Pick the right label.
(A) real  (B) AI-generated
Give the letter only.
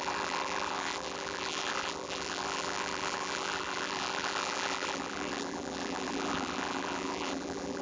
B